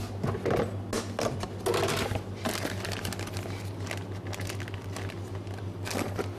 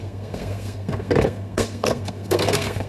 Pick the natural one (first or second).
first